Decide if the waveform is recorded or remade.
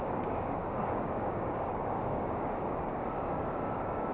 remade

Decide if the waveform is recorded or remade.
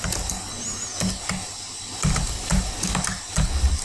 recorded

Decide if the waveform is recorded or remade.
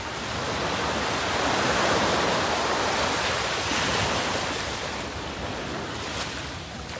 recorded